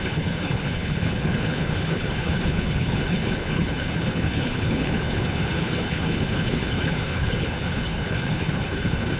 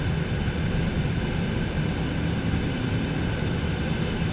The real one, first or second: second